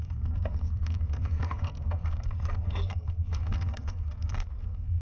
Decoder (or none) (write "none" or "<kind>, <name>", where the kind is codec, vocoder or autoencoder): codec, SNAC